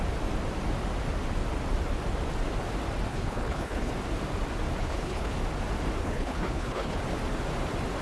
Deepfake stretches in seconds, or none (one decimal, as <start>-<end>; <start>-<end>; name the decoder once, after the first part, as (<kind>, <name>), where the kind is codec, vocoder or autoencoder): 3.1-3.9 (codec, HILCodec); 4.8-5.4; 6.0-7.0